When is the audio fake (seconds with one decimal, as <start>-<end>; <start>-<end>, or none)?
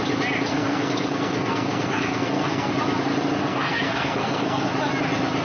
0.5-2.7; 3.4-4.7